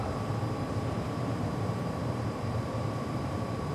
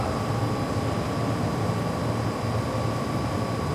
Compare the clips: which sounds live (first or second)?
second